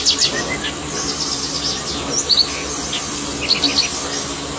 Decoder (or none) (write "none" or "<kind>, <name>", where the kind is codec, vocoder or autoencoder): none